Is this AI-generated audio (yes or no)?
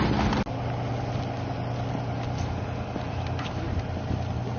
no